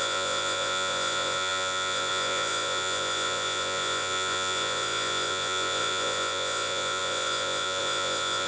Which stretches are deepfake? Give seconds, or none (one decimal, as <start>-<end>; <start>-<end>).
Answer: 0.0-8.5